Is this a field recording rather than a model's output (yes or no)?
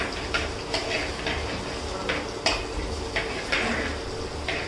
yes